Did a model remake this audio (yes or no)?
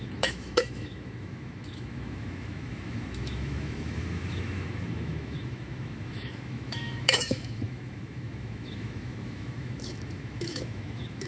yes